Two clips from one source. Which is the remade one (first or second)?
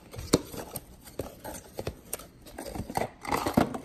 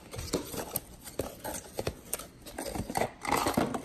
first